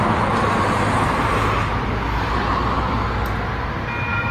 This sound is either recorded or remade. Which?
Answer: recorded